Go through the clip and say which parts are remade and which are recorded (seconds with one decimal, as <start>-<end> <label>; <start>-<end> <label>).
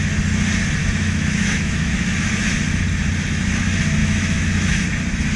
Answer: 0.0-0.8 recorded; 0.8-2.1 remade; 2.1-4.0 recorded; 4.0-4.8 remade; 4.8-5.4 recorded